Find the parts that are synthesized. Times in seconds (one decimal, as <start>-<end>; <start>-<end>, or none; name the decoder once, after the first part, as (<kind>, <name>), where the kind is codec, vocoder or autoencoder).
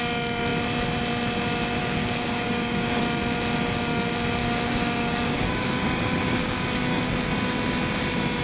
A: 1.8-3.0 (codec, DAC); 4.4-7.1